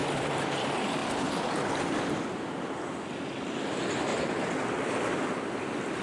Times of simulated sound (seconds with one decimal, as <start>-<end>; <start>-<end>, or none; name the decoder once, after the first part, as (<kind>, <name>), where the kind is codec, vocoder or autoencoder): 0.0-0.6 (vocoder, BigVGAN v2)